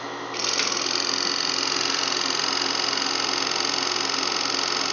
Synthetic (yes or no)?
no